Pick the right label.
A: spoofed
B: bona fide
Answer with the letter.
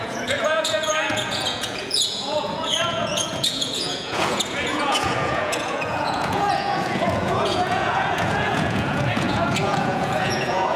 A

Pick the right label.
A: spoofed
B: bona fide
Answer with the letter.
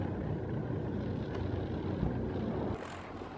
B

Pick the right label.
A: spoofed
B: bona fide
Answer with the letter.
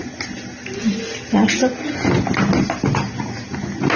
B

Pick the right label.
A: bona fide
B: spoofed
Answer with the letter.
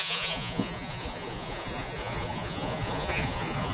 B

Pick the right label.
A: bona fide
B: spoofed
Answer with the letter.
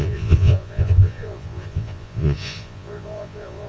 B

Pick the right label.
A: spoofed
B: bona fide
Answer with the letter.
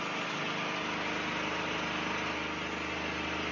B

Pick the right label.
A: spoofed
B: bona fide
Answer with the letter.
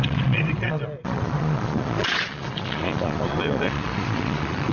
A